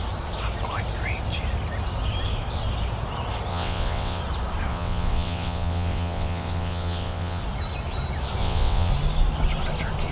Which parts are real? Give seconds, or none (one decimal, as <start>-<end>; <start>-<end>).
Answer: 0.0-3.5; 4.2-4.7; 7.4-8.4; 8.9-10.1